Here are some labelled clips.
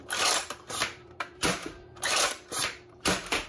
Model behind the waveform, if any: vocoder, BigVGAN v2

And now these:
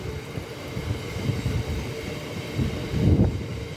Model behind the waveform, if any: none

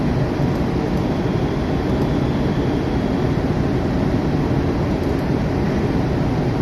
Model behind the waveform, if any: none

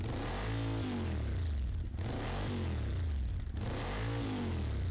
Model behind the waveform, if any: none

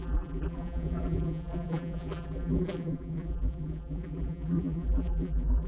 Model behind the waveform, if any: vocoder, BigVGAN v2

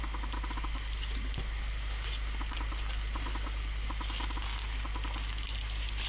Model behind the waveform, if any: none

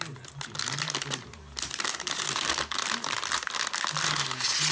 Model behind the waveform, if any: none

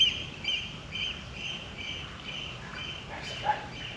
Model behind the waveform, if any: none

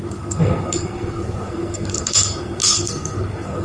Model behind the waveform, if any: codec, SNAC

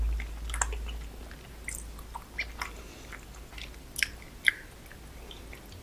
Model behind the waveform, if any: none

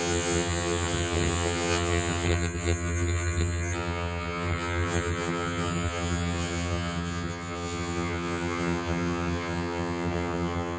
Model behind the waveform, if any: vocoder, HiFi-GAN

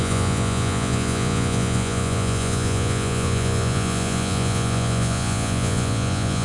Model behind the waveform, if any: vocoder, Vocos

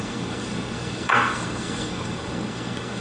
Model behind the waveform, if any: codec, SNAC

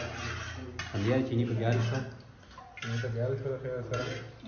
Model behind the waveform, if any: none